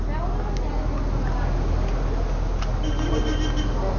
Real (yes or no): yes